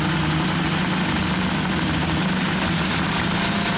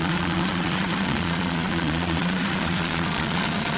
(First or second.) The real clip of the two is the first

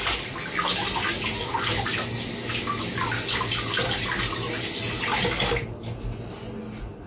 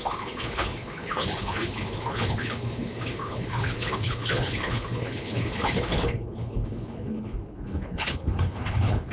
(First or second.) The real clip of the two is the first